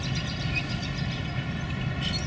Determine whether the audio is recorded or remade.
recorded